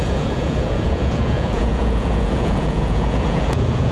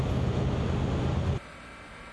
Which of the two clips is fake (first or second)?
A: first